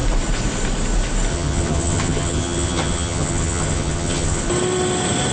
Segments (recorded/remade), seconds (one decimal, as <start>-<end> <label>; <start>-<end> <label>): 0.0-1.3 recorded; 1.3-4.4 remade; 4.4-5.3 recorded

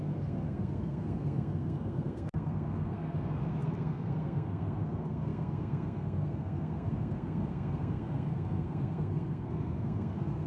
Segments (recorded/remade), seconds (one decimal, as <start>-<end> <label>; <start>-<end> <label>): 0.0-10.5 remade

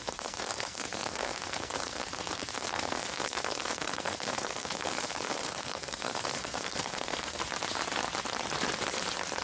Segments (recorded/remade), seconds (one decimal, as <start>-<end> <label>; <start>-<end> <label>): 0.0-7.4 remade; 7.4-9.4 recorded

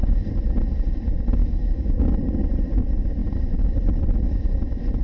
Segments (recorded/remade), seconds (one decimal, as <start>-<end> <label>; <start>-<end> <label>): 0.0-1.4 recorded; 1.4-2.0 remade; 2.0-5.0 recorded

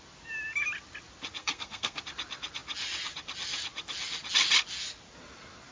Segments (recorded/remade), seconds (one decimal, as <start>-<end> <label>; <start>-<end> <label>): 0.0-1.4 recorded; 1.4-2.0 remade; 2.0-5.7 recorded

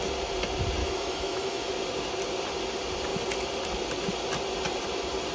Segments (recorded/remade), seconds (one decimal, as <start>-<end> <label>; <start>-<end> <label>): 0.0-0.8 recorded; 0.8-1.7 remade; 1.7-5.3 recorded

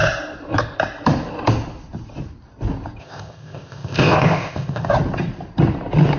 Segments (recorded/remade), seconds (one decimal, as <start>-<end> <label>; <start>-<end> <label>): 0.0-3.0 recorded; 3.0-4.9 remade; 4.9-6.2 recorded